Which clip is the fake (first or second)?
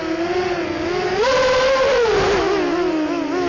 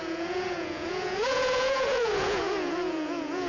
second